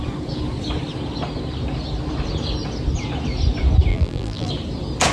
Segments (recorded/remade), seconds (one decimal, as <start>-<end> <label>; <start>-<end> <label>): 0.0-3.9 recorded; 3.9-4.5 remade; 4.5-5.1 recorded